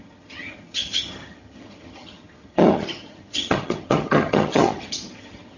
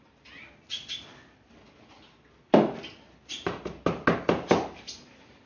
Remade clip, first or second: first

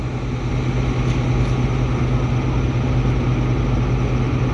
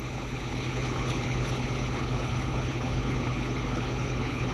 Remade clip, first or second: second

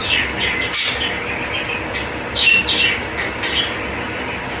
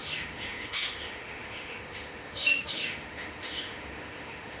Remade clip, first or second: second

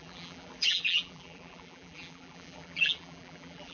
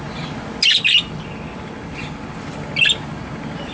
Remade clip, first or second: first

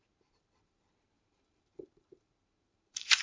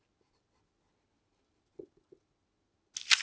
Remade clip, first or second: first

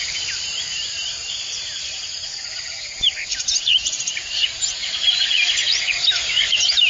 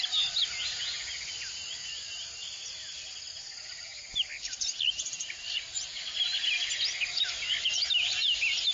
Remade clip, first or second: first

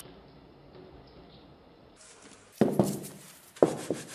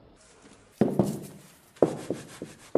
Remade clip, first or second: second